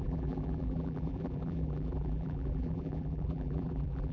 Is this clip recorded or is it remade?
remade